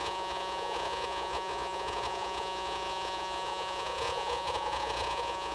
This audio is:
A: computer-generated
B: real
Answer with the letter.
A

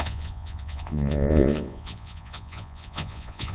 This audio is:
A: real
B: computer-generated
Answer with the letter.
B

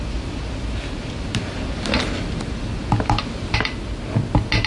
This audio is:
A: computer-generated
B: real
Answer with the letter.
B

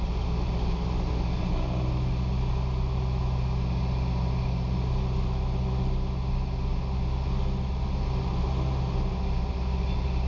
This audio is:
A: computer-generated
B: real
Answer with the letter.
B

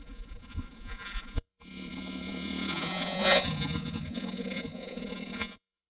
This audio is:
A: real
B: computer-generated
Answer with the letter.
B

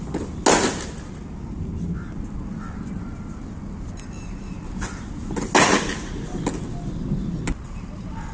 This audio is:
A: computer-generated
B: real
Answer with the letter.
B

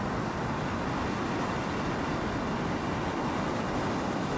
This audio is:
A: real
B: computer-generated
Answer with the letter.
A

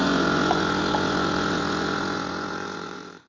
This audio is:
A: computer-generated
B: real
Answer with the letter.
A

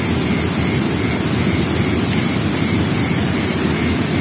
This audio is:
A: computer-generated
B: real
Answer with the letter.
B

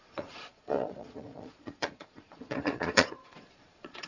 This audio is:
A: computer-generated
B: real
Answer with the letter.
A